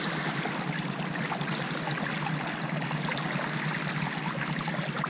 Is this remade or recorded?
recorded